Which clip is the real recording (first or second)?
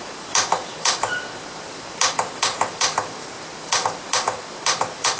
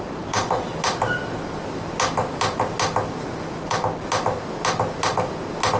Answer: second